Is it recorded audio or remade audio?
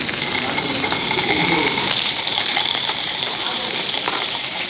remade